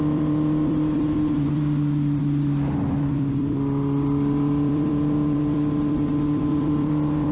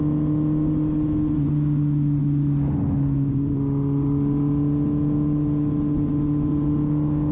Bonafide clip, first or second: second